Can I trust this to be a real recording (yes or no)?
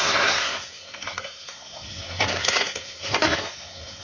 no